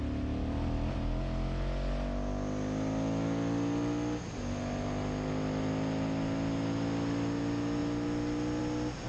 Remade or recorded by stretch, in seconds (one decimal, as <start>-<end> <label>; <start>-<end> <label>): 0.0-9.1 recorded